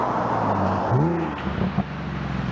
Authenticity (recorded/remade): recorded